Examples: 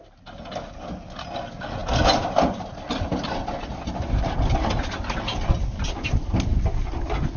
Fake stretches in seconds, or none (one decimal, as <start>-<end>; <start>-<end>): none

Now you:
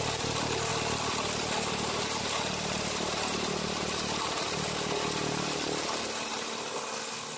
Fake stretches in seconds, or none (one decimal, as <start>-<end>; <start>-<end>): none

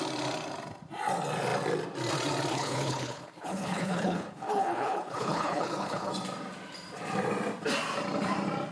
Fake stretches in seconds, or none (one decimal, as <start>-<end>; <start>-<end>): 2.5-6.1

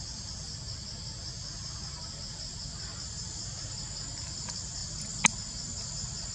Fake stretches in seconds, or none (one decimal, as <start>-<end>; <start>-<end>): none

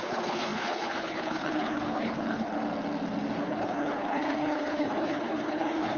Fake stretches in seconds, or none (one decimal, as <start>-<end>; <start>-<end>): 0.0-2.6; 3.4-6.0

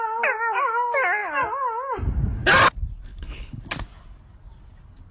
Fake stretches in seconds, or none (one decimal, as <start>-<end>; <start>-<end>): 3.1-3.6

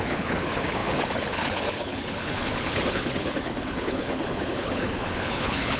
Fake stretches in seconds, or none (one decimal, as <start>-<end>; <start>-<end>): 0.0-5.8

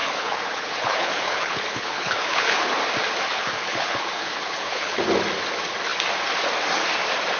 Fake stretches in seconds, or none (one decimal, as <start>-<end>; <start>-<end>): 0.0-2.7; 3.3-5.0